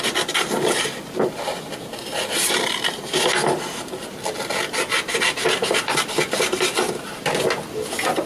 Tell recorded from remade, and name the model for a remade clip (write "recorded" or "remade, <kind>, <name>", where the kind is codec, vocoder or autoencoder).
recorded